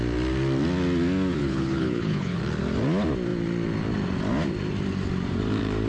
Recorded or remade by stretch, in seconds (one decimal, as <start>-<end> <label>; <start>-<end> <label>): 0.0-1.4 recorded; 1.4-2.4 remade; 2.4-5.9 recorded